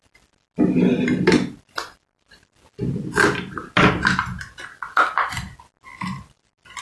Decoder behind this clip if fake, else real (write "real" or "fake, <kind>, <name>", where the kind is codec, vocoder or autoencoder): real